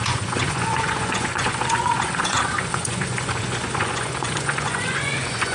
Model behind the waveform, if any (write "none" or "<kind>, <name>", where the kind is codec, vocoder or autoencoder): vocoder, Vocos